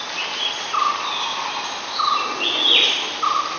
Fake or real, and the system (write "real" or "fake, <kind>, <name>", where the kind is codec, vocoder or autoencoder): real